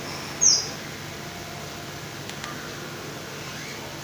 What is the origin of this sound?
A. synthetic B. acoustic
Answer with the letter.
B